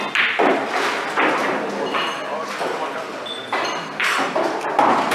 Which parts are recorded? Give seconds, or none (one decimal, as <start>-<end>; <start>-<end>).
0.0-5.1